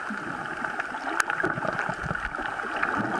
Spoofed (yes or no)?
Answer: no